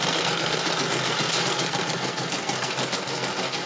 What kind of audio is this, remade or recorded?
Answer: remade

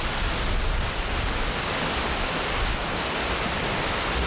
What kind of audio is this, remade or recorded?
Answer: recorded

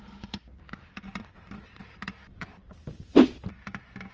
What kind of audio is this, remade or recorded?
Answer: remade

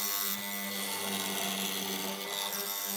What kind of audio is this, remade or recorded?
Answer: recorded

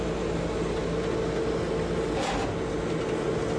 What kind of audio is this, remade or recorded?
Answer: recorded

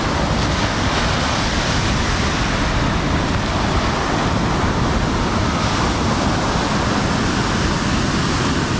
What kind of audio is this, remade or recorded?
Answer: recorded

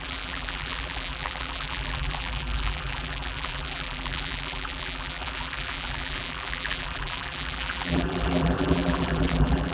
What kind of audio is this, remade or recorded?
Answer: remade